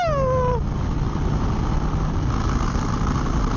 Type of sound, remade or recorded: recorded